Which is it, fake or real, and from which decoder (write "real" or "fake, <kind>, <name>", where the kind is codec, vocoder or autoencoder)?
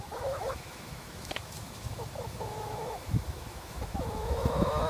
fake, autoencoder, DAC-VAE